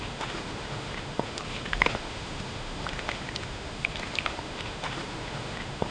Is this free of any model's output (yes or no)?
no